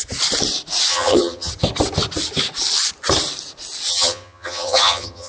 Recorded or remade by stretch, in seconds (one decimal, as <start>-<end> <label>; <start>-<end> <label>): 0.0-0.9 recorded; 0.9-1.5 remade; 1.5-3.9 recorded; 3.9-5.3 remade